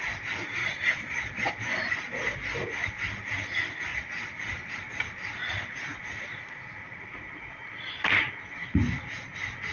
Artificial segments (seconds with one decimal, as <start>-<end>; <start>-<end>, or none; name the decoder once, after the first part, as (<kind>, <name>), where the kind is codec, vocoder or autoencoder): 0.6-1.5 (vocoder, Vocos); 3.9-4.7